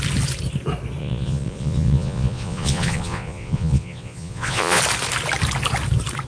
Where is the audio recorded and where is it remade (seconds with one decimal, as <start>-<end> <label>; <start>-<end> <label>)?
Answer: 0.0-1.0 recorded; 1.0-4.8 remade; 4.8-6.3 recorded